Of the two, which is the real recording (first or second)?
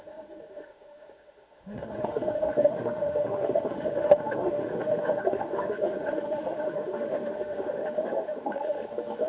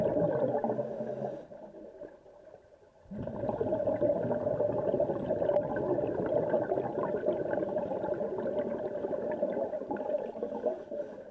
second